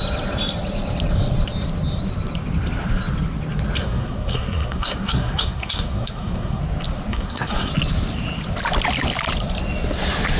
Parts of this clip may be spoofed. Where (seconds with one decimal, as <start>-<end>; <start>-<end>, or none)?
3.8-6.6; 7.1-7.7